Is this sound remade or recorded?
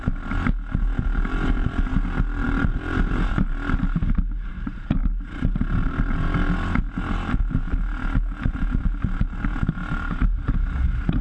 recorded